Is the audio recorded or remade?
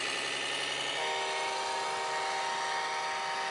recorded